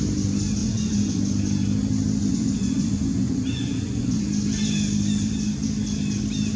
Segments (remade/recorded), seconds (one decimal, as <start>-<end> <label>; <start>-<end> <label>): 0.0-0.6 recorded; 0.6-1.2 remade; 1.2-2.3 recorded; 2.3-4.2 remade; 4.2-6.6 recorded